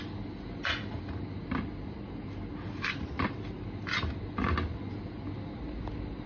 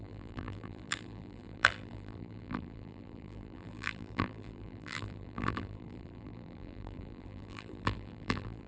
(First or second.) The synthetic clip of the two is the second